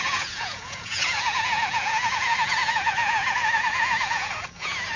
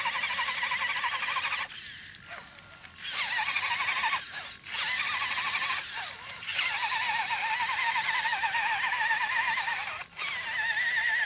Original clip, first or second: second